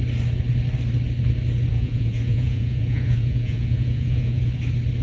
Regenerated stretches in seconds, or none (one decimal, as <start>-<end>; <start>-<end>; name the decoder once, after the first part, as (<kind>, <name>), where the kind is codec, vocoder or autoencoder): 1.7-4.5 (vocoder, Vocos)